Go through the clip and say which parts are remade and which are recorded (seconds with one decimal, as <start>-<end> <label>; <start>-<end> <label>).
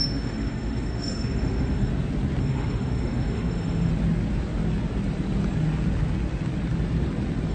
0.0-1.9 remade; 1.9-2.4 recorded; 2.4-3.9 remade; 3.9-7.5 recorded